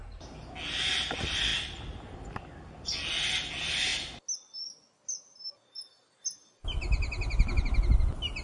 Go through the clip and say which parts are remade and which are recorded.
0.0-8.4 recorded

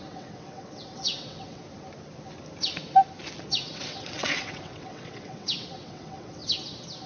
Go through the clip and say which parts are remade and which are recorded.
0.0-1.6 remade; 1.6-3.5 recorded; 3.5-6.4 remade; 6.4-7.1 recorded